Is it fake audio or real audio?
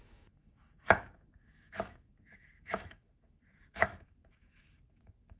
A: fake